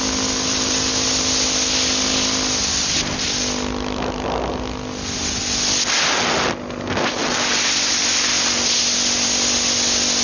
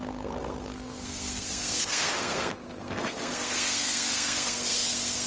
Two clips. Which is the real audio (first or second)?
first